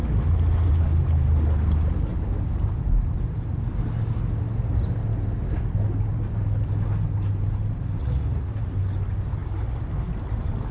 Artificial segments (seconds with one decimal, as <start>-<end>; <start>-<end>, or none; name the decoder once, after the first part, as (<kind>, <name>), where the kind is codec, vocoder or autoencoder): 8.0-8.7 (vocoder, Vocos)

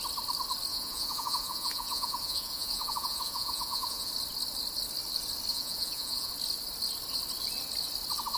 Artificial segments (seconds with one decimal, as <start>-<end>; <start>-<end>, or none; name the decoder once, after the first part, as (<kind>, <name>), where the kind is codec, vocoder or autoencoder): 0.7-4.1 (vocoder, Vocos); 5.5-6.3

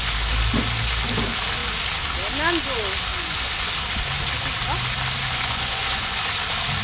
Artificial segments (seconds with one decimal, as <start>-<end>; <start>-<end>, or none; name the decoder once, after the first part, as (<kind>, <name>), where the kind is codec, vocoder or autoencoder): 3.1-3.7 (vocoder, Vocos); 5.3-6.2

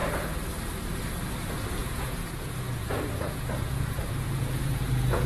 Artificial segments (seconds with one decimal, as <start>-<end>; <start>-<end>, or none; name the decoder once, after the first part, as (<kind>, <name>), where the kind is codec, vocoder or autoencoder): 1.8-5.3 (vocoder, Vocos)

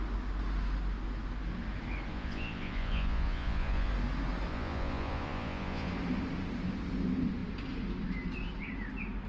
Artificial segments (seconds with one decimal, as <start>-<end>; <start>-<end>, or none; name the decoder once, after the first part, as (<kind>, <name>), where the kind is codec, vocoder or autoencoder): 2.1-3.9 (vocoder, Vocos); 4.5-5.9

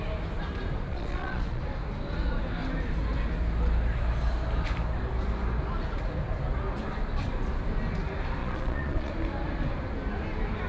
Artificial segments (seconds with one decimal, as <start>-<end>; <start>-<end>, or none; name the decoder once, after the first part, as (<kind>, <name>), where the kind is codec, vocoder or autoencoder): 0.9-1.6 (vocoder, Vocos); 8.4-9.1

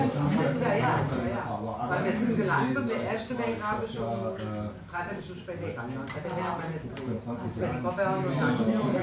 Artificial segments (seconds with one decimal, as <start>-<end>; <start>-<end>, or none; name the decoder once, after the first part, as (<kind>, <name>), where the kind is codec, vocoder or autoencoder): none

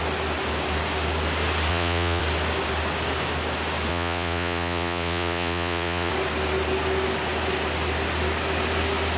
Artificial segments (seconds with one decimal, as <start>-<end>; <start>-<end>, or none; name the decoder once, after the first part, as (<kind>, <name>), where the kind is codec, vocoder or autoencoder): 1.7-2.2 (vocoder, Vocos); 3.9-6.1